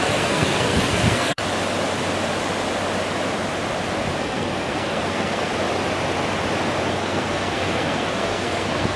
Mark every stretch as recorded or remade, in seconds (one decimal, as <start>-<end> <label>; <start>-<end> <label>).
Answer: 0.0-1.4 remade; 1.4-4.2 recorded; 4.2-5.5 remade; 5.5-6.9 recorded; 6.9-9.0 remade